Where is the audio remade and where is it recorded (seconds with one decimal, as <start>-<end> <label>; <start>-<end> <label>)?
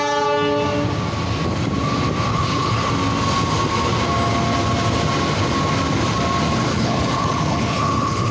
0.0-2.3 recorded; 2.3-2.9 remade; 2.9-6.7 recorded; 6.7-8.3 remade